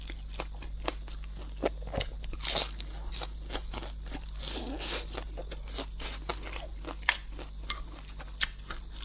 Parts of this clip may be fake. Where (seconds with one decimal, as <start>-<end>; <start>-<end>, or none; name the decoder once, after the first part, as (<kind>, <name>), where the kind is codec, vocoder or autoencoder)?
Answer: none